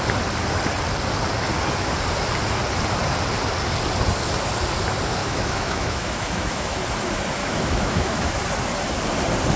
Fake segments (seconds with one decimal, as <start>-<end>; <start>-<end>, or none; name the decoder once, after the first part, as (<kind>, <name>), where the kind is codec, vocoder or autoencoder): 5.2-6.8 (autoencoder, DAC-VAE); 7.4-8.3